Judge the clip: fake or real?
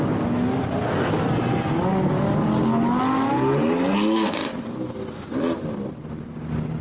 real